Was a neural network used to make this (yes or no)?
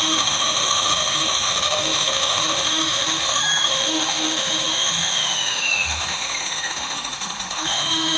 yes